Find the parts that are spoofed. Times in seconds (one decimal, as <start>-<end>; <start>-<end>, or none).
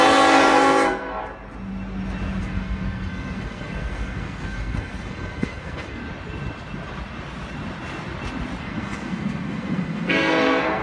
0.0-1.1; 2.4-6.0; 8.6-10.8